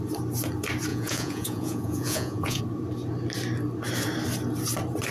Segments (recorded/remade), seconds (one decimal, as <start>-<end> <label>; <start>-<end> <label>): 0.0-0.9 recorded; 0.9-2.6 remade; 2.6-5.1 recorded